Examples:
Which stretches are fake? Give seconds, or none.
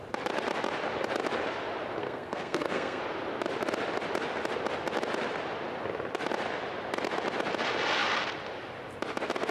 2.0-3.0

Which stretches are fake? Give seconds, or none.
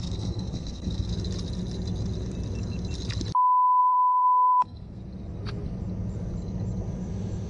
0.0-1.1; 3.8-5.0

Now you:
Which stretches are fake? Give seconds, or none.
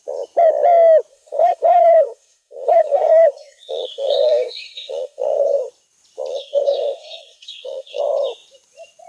1.1-5.7; 6.3-8.0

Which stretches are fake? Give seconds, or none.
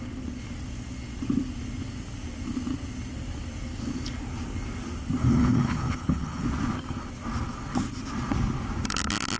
5.2-6.5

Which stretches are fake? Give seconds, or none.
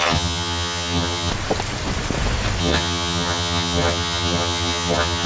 0.0-1.3; 2.6-5.3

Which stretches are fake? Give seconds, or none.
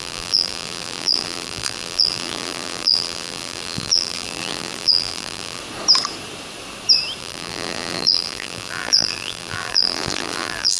0.0-5.6; 7.2-10.8